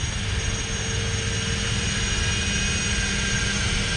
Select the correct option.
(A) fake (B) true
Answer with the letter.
B